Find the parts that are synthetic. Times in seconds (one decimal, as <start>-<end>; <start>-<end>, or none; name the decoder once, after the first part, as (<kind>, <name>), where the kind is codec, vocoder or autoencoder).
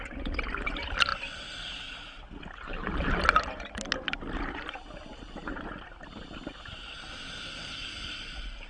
none